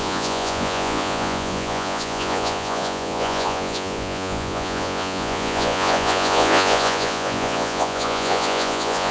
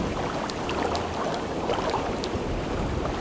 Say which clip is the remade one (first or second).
first